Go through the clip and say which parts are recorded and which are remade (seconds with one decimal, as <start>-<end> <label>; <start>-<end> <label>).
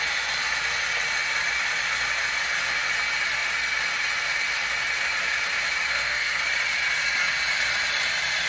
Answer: 0.0-5.9 recorded; 5.9-6.4 remade; 6.4-8.5 recorded